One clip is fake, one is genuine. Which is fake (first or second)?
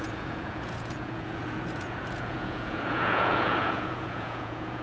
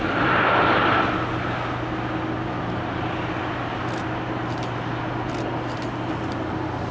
first